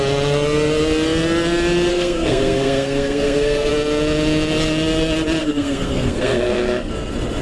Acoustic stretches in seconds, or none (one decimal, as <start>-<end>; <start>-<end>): 0.0-1.9; 3.7-5.4; 6.9-7.4